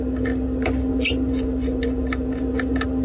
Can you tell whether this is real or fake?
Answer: real